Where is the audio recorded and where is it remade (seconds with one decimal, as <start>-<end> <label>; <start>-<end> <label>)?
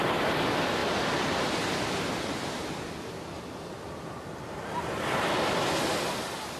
0.0-6.6 recorded